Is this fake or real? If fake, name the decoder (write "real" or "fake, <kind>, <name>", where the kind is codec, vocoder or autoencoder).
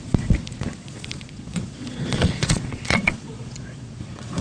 fake, vocoder, Vocos